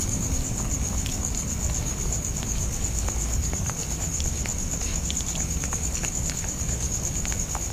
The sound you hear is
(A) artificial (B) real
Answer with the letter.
A